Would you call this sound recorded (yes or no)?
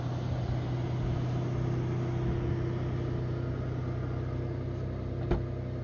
yes